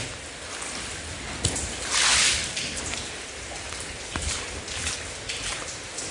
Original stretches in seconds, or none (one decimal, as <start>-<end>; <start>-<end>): 0.0-2.4; 4.4-6.1